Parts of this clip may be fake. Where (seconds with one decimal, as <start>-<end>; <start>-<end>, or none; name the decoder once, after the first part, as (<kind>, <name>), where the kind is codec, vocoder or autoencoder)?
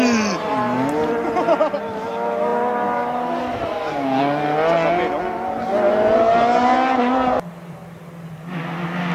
none